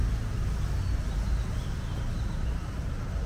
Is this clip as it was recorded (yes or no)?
yes